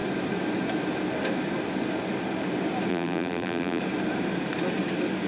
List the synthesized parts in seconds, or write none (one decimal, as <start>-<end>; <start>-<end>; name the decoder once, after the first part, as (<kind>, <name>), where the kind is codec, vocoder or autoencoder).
2.9-3.8 (vocoder, BigVGAN v2)